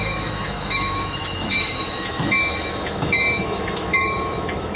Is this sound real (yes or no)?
no